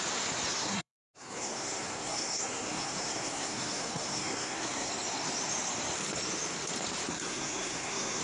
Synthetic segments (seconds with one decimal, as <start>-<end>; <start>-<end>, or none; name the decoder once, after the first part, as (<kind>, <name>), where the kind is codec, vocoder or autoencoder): 0.5-4.9 (codec, SNAC); 7.1-8.2